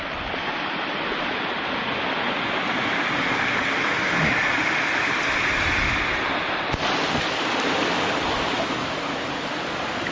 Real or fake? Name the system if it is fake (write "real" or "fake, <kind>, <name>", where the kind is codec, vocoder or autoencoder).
real